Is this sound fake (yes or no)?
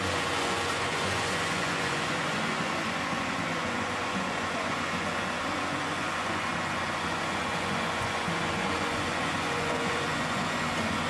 yes